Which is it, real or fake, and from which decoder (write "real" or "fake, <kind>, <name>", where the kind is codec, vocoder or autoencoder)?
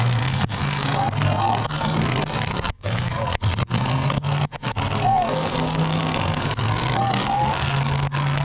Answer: fake, codec, SNAC